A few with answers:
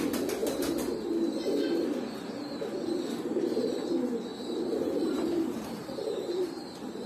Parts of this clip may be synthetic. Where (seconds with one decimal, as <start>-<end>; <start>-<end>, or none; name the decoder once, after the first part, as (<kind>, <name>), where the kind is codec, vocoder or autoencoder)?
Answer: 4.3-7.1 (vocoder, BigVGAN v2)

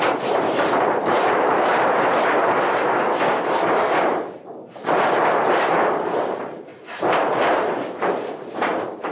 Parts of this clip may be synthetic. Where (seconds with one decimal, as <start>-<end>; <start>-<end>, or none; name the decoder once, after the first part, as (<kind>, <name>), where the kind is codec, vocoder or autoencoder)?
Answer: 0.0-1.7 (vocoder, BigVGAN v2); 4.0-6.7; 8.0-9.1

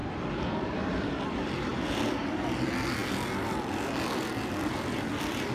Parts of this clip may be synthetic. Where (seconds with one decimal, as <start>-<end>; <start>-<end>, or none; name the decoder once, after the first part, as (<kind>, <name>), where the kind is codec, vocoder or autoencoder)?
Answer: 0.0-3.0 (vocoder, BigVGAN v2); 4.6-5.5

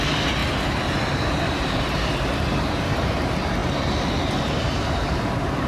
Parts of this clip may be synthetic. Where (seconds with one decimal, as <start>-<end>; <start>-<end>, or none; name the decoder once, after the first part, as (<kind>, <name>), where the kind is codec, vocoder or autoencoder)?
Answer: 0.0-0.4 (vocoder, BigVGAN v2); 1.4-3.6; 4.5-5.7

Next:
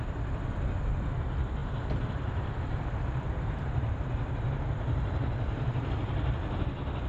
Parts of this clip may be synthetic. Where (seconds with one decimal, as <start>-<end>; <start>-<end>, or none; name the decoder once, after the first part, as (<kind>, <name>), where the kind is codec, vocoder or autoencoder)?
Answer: 1.6-5.9 (vocoder, BigVGAN v2)